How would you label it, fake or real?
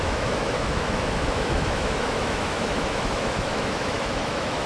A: fake